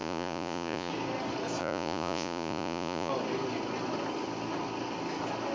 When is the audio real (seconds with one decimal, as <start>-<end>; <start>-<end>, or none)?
0.9-1.6; 3.1-5.5